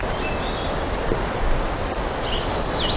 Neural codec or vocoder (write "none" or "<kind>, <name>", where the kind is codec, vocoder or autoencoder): none